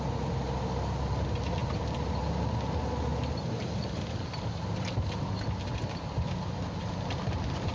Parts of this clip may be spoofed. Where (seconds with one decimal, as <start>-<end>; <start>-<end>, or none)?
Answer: none